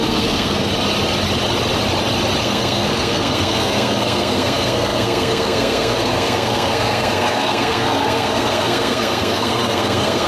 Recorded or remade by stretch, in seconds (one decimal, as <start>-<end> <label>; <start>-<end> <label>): 0.0-0.7 remade; 0.7-2.4 recorded; 2.4-10.3 remade